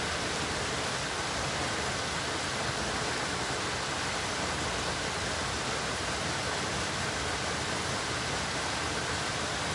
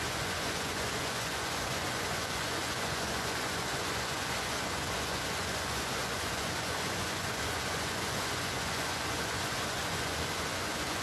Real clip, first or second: first